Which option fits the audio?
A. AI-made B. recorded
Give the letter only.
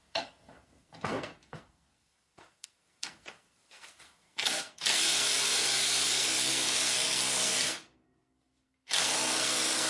A